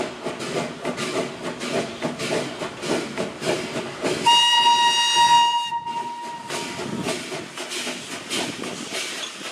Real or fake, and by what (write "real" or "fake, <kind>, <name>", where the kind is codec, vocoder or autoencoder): real